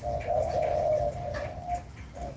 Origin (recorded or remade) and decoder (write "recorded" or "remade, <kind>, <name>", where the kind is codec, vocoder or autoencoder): recorded